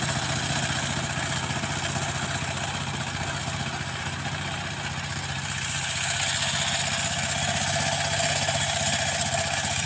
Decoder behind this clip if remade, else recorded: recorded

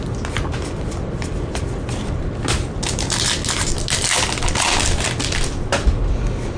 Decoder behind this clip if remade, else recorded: recorded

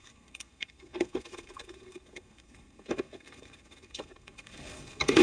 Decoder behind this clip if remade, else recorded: remade, codec, SNAC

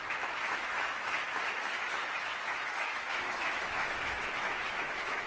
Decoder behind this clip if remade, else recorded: remade, autoencoder, DAC-VAE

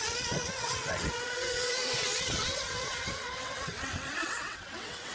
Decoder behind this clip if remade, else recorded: remade, vocoder, WaveNeXt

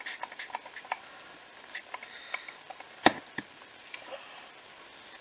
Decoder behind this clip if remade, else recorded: recorded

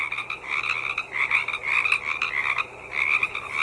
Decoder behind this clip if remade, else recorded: recorded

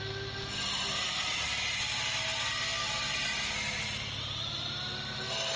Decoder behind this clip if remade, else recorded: recorded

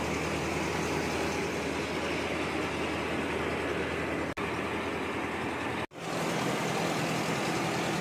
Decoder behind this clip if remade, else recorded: recorded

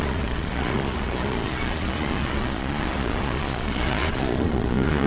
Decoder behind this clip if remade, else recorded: remade, vocoder, Vocos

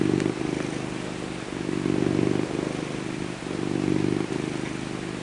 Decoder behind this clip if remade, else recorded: recorded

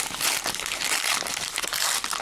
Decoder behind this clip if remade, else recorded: recorded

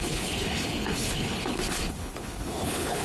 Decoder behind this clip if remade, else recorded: remade, codec, HILCodec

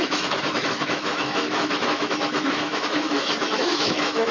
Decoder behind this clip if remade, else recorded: remade, autoencoder, DAC-VAE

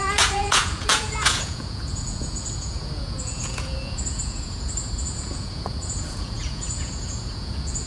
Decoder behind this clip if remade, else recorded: remade, vocoder, Vocos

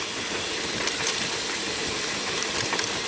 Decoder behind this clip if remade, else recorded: recorded